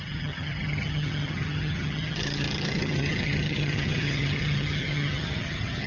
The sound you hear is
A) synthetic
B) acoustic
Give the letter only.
A